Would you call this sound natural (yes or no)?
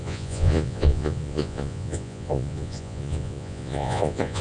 no